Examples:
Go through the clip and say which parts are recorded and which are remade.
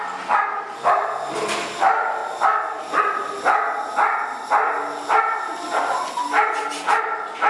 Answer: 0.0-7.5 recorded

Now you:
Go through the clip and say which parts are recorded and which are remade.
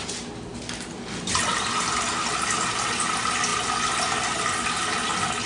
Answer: 0.0-5.5 recorded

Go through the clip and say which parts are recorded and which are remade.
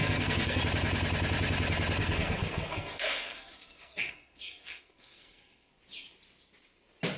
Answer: 0.0-0.6 remade; 0.6-2.0 recorded; 2.0-5.7 remade; 5.7-7.2 recorded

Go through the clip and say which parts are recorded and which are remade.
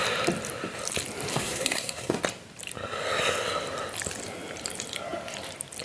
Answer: 0.0-1.3 recorded; 1.3-2.2 remade; 2.2-5.8 recorded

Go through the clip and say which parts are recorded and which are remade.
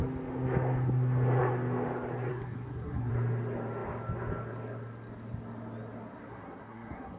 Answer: 0.0-2.3 recorded; 2.3-3.1 remade; 3.1-6.3 recorded; 6.3-7.2 remade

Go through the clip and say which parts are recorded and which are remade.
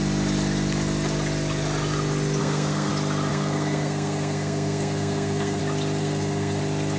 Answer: 0.0-2.4 recorded; 2.4-2.9 remade; 2.9-3.3 recorded; 3.3-5.6 remade; 5.6-6.0 recorded; 6.0-6.6 remade; 6.6-7.0 recorded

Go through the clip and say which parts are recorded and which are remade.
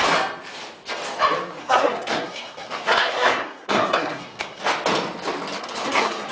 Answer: 0.0-1.6 recorded; 1.6-4.6 remade; 4.6-5.6 recorded; 5.6-6.3 remade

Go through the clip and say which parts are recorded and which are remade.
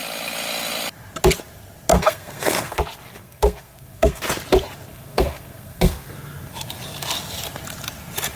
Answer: 0.0-1.9 recorded; 1.9-2.8 remade; 2.8-3.2 recorded; 3.2-4.2 remade; 4.2-4.9 recorded; 4.9-6.1 remade; 6.1-8.4 recorded